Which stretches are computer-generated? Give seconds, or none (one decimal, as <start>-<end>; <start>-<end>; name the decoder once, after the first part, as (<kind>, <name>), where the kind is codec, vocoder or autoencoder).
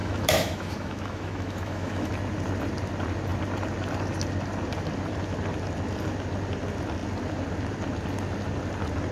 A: 0.0-2.1 (autoencoder, DAC-VAE)